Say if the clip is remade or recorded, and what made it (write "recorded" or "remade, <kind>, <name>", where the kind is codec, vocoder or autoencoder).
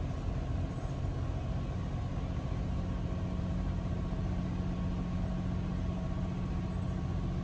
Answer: recorded